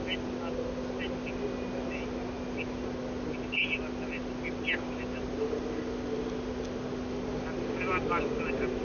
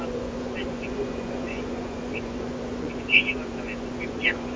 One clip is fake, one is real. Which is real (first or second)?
first